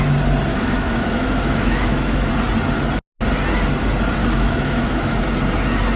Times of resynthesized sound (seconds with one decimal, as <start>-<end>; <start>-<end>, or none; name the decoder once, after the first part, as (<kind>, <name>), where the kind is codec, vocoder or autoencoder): 0.5-2.3 (autoencoder, DAC-VAE); 4.2-5.2

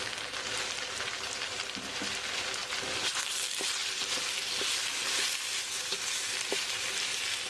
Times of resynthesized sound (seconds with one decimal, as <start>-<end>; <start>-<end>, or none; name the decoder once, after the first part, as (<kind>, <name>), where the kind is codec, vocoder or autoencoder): none

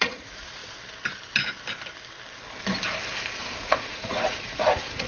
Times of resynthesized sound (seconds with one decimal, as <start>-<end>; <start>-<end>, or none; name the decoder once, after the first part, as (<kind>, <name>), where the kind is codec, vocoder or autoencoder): 0.0-0.6 (vocoder, Vocos); 3.6-5.1

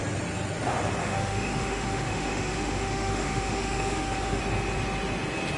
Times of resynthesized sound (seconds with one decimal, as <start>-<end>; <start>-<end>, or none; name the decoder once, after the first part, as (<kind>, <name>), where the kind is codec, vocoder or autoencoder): 1.0-4.4 (autoencoder, DAC-VAE)

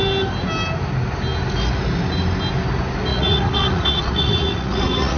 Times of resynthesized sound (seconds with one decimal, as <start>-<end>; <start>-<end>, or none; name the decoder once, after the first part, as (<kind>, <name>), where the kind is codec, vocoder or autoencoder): 3.1-5.2 (vocoder, Vocos)